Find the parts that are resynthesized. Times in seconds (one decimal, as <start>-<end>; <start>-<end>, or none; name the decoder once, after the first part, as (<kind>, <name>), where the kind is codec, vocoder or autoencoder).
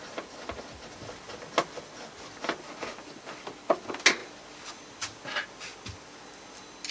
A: none